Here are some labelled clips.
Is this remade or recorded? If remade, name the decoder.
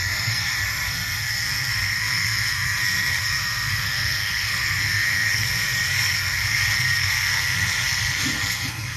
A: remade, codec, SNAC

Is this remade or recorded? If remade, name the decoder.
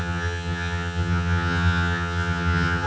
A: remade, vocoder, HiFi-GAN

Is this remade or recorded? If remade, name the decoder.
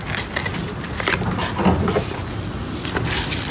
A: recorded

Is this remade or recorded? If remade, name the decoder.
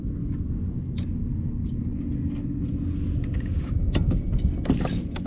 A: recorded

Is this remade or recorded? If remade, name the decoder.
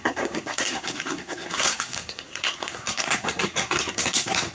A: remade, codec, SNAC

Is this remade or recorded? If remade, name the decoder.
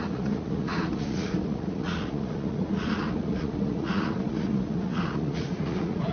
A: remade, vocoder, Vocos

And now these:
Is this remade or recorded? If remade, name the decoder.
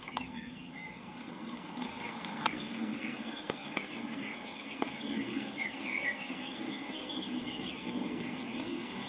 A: remade, codec, SNAC